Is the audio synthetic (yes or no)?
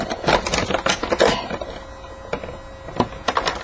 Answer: no